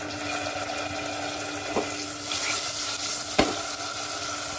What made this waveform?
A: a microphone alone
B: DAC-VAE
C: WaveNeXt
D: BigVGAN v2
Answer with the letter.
A